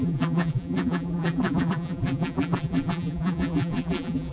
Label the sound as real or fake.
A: fake